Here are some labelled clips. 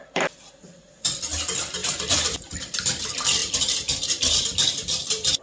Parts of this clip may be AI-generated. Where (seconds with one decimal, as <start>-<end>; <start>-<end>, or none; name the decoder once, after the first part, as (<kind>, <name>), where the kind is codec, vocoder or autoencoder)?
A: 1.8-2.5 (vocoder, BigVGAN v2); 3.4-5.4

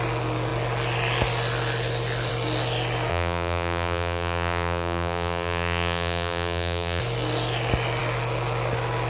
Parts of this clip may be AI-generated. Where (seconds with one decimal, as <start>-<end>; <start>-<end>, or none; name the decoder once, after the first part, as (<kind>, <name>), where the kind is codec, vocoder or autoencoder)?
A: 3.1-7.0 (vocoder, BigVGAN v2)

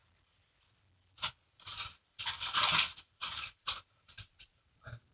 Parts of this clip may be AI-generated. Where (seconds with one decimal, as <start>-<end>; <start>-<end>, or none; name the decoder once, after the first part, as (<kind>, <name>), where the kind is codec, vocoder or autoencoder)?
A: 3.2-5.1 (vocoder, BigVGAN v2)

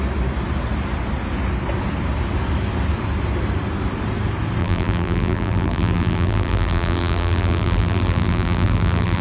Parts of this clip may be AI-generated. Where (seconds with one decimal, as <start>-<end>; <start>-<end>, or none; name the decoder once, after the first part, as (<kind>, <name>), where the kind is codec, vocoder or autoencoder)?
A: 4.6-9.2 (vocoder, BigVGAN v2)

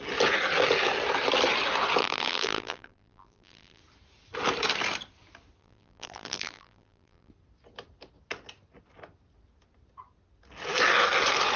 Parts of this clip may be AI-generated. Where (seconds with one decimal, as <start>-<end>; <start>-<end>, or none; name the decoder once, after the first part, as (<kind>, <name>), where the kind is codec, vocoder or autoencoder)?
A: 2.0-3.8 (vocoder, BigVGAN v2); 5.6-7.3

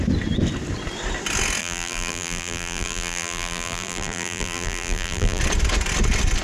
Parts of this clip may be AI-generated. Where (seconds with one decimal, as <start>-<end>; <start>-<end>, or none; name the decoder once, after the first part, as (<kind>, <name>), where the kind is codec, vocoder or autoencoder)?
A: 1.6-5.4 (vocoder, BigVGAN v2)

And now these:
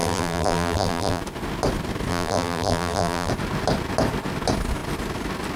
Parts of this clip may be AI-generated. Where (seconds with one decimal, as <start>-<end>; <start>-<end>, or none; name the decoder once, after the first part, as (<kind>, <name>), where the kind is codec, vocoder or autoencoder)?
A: 0.0-1.2 (vocoder, BigVGAN v2); 2.1-3.3

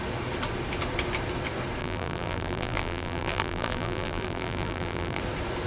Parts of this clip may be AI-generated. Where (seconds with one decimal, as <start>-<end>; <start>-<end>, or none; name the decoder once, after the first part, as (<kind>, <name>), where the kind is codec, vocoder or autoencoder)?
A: 1.8-5.2 (vocoder, BigVGAN v2)